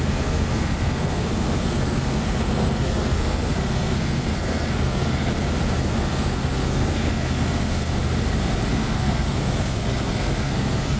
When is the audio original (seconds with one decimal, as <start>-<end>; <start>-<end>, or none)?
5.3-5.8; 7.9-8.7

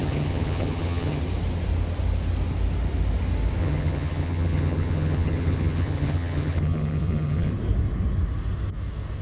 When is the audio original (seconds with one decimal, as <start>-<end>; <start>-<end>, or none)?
1.2-3.6; 7.5-9.2

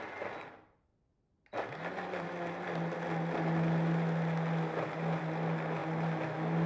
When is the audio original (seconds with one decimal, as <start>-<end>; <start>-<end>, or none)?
0.0-6.7